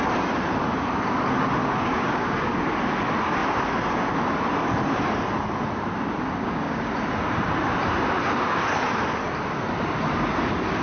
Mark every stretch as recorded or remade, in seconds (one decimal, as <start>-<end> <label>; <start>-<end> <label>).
0.0-1.6 recorded; 1.6-2.5 remade; 2.5-6.4 recorded; 6.4-6.9 remade; 6.9-10.8 recorded